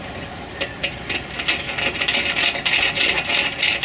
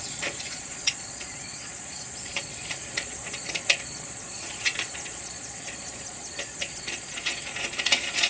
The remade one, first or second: second